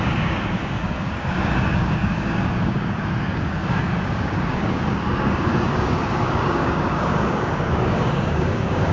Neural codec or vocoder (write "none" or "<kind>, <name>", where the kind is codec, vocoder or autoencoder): codec, DAC